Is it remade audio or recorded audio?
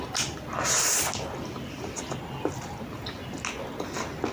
recorded